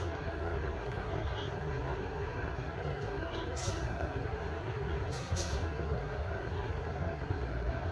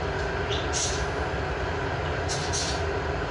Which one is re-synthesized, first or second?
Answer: first